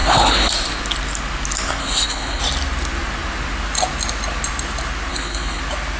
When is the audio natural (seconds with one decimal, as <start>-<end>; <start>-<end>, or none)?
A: 0.5-1.8; 2.4-5.1; 5.6-6.0